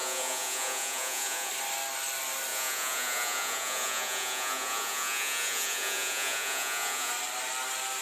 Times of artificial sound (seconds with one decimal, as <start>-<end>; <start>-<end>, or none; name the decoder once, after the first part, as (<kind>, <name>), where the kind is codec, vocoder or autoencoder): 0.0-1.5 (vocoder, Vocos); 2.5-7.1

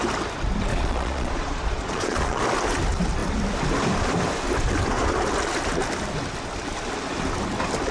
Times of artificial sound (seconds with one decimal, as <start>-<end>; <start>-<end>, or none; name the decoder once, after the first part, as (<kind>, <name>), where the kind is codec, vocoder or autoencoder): 0.7-2.4 (vocoder, Vocos)

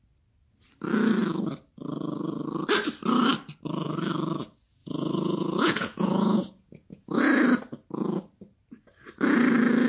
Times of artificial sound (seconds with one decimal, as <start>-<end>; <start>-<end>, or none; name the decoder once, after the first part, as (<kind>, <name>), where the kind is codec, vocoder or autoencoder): 4.8-7.2 (vocoder, Vocos)

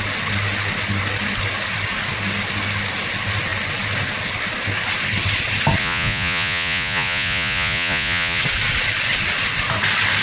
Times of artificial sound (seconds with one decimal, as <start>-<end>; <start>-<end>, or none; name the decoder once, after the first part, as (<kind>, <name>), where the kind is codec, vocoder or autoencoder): 5.8-8.4 (vocoder, Vocos)